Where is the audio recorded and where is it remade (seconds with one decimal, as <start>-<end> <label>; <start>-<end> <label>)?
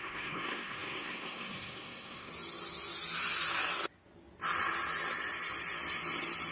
0.0-2.3 remade; 2.3-6.5 recorded